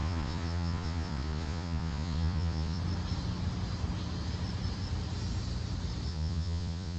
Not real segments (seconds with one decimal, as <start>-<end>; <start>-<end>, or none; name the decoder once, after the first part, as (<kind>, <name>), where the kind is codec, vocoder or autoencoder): 0.0-2.8 (vocoder, Vocos); 6.1-7.0